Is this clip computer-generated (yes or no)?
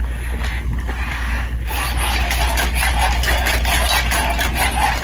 no